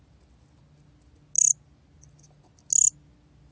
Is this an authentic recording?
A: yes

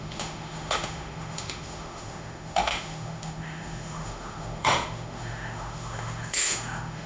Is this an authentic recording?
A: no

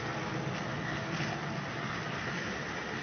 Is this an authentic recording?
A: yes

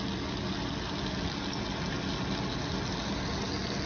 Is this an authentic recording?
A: yes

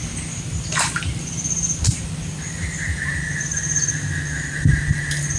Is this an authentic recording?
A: yes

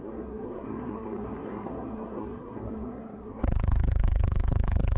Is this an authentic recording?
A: no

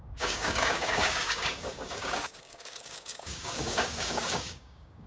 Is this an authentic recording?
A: no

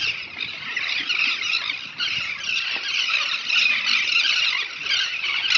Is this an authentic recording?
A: yes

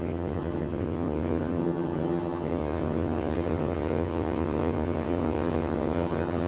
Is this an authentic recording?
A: no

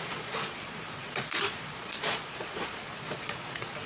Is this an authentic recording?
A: no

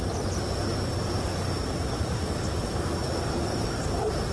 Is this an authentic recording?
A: yes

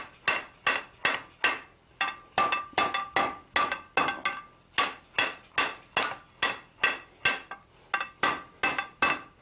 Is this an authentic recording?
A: yes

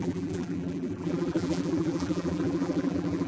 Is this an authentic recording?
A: no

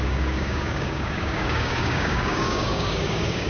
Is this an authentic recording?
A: no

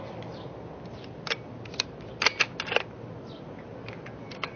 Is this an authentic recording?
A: yes